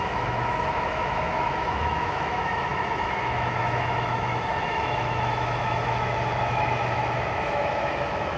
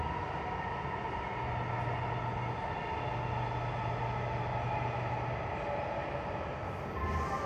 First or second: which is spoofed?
first